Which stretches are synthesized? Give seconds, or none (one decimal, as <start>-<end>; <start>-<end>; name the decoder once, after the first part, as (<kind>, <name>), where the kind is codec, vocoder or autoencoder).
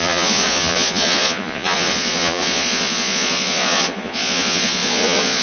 0.0-5.4 (vocoder, Vocos)